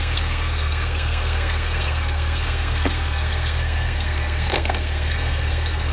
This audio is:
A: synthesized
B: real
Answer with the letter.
A